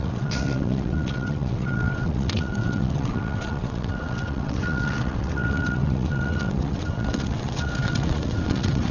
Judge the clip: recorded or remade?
remade